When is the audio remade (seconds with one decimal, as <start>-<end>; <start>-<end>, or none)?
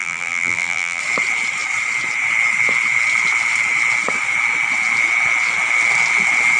0.0-1.0